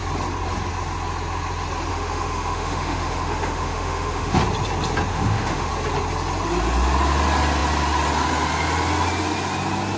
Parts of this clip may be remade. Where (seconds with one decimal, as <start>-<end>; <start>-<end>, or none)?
1.9-4.4; 5.1-5.7